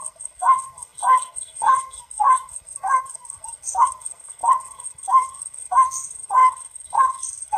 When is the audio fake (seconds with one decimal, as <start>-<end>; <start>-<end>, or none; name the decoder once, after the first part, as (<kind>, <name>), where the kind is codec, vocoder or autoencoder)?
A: 0.0-7.6 (codec, SNAC)